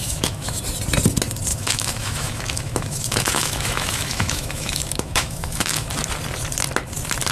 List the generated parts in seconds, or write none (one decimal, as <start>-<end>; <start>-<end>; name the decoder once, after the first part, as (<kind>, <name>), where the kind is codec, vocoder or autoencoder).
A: 0.0-0.6 (autoencoder, DAC-VAE); 1.5-5.9